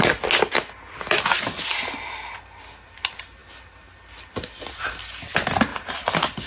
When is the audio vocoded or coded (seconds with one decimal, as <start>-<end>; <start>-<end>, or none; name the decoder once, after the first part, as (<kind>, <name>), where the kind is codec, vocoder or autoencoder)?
5.7-6.5 (vocoder, BigVGAN v2)